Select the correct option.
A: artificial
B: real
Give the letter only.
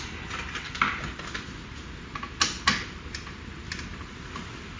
B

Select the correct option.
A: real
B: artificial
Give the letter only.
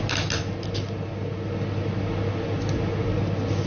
A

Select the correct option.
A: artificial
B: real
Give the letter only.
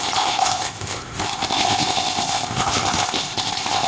A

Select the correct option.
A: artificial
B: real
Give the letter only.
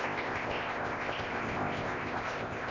A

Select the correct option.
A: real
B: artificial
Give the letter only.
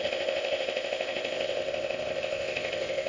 B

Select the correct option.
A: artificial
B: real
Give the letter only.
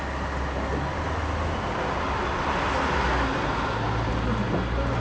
B